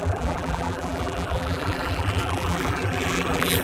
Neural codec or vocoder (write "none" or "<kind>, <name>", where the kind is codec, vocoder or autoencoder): vocoder, BigVGAN v2